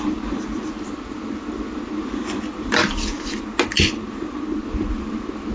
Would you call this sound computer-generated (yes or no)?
no